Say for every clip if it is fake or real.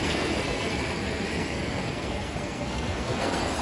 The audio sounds fake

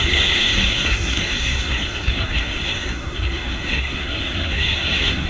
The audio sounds fake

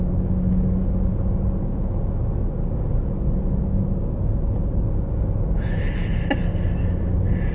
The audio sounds real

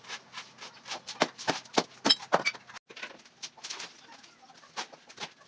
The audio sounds real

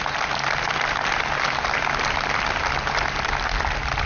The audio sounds real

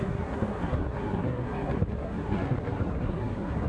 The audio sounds fake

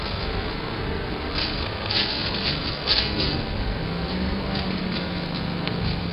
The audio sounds fake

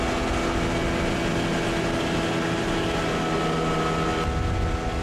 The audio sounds real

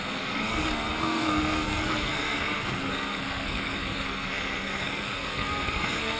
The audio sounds fake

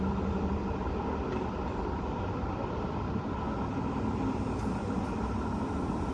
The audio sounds real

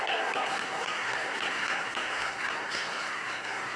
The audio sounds fake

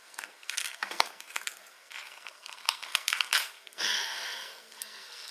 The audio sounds fake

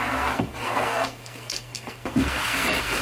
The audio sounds fake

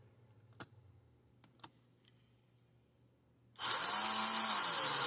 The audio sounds real